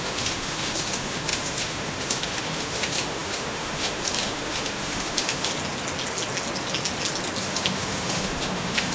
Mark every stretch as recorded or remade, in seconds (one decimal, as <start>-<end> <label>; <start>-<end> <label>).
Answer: 0.0-5.5 remade; 5.5-7.4 recorded; 7.4-8.9 remade